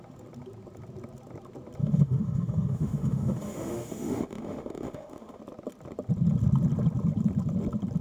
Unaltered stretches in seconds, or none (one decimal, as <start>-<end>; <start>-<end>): 0.0-1.8; 5.4-8.0